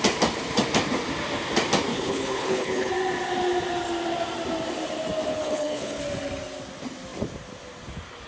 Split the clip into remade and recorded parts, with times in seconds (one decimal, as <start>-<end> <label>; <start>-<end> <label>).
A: 0.0-1.9 recorded; 1.9-2.9 remade; 2.9-5.3 recorded; 5.3-6.0 remade; 6.0-8.3 recorded